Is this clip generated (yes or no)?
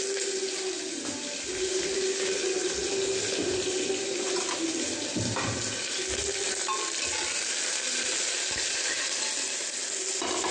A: no